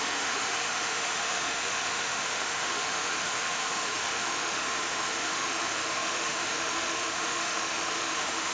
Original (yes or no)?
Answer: no